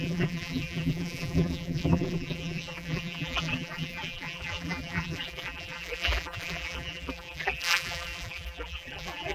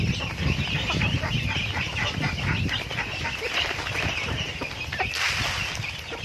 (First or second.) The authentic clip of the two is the second